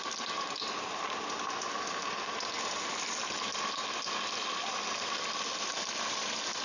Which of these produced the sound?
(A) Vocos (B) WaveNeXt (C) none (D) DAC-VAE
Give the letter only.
C